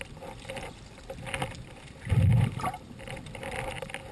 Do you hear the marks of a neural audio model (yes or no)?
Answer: no